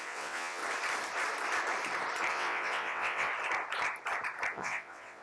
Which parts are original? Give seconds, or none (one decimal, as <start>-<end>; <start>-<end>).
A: 0.6-2.3; 3.3-4.5